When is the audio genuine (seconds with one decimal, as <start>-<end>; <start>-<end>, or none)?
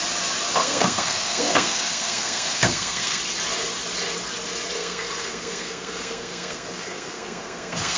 0.0-0.6; 3.2-4.8